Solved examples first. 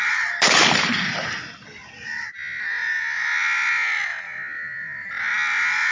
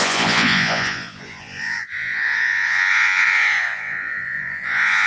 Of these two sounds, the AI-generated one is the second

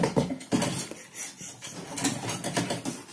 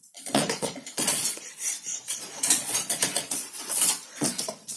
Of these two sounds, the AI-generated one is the second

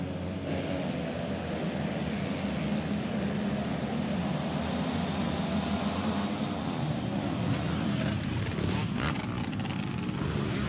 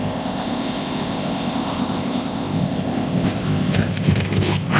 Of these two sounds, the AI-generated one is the second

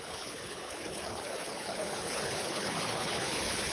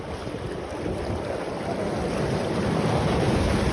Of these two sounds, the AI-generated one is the first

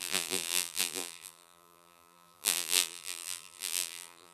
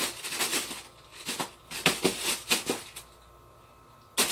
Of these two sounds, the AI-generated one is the first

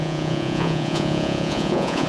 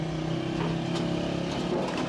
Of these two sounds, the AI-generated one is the first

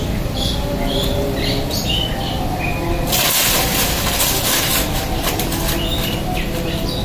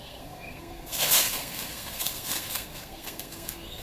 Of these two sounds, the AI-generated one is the second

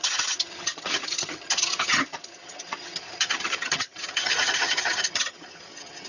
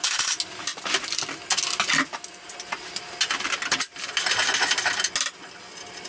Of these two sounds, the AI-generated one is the first